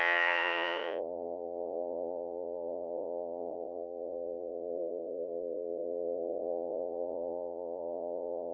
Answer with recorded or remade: remade